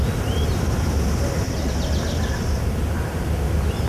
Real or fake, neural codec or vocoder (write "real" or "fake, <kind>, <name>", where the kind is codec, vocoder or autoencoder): real